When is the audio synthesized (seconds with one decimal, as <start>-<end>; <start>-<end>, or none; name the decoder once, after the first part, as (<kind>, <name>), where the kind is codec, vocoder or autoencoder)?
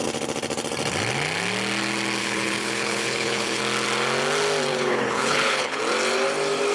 2.2-3.6 (codec, HILCodec); 4.7-5.8